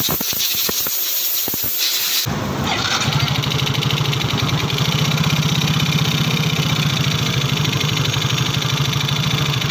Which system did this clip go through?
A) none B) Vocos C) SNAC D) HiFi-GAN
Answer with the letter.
A